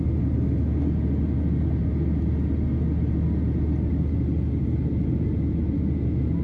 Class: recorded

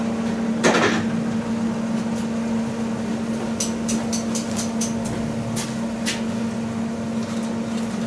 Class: recorded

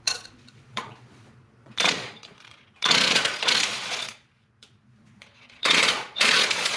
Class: remade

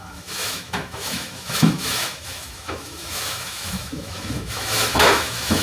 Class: remade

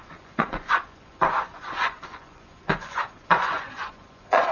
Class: remade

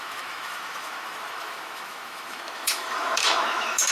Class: remade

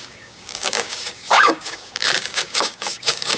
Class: remade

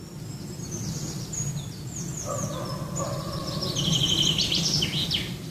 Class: recorded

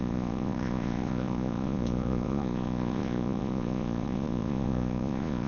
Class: remade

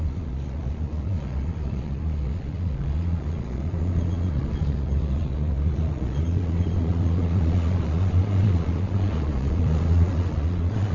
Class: remade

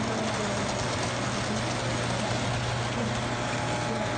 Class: recorded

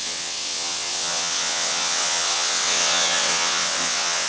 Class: remade